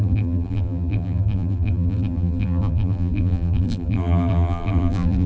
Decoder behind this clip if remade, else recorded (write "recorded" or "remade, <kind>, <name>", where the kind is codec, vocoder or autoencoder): remade, vocoder, BigVGAN v2